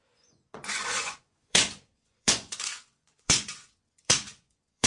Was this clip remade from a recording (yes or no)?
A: yes